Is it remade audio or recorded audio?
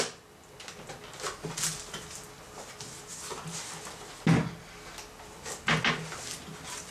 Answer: recorded